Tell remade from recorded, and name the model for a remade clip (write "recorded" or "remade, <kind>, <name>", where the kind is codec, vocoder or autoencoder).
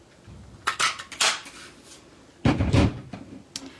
recorded